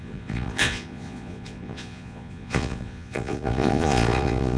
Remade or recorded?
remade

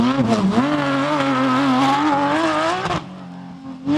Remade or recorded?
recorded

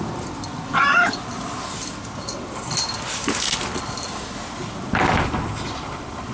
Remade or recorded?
recorded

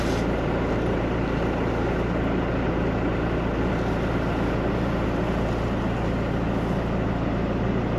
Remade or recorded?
recorded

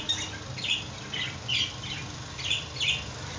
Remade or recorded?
recorded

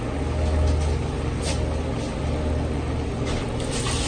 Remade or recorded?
recorded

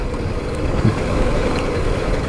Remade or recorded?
remade